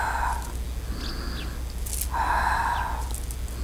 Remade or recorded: recorded